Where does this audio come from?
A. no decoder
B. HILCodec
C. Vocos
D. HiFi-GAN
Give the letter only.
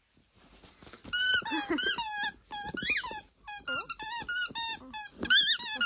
A